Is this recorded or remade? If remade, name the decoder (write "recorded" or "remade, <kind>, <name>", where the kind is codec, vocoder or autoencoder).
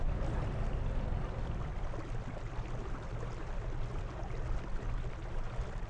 recorded